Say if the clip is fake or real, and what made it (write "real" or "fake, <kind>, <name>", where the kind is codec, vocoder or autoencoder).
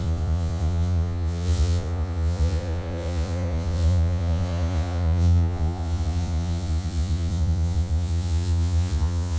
fake, vocoder, Vocos